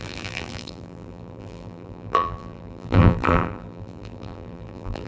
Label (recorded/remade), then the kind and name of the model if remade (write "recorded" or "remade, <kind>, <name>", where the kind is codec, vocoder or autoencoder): remade, vocoder, BigVGAN v2